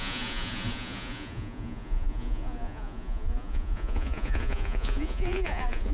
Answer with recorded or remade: remade